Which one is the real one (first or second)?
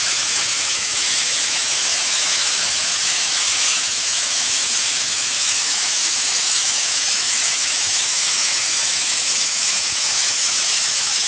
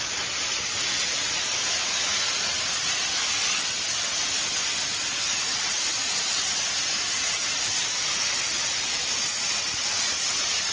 second